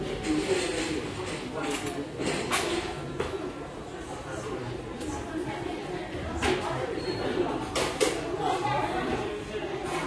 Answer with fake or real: fake